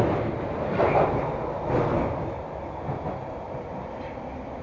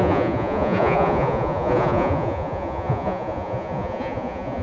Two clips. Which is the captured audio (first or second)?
first